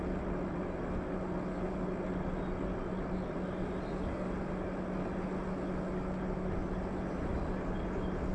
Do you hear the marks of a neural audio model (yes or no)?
no